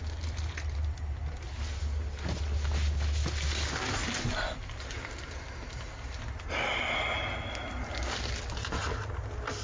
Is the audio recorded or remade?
recorded